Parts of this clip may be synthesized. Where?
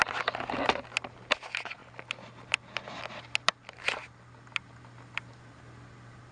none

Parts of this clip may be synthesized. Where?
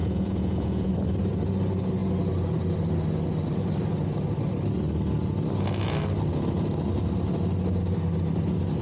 0.0-0.9 (vocoder, Vocos)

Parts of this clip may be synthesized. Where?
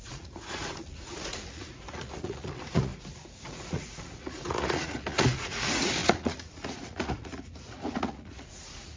0.0-2.9 (vocoder, Vocos); 3.5-9.0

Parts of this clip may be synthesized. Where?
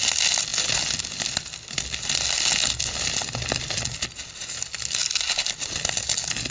none